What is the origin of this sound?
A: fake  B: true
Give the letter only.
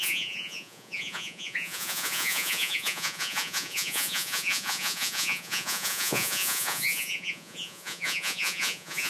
A